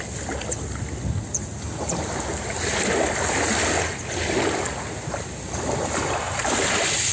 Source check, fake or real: real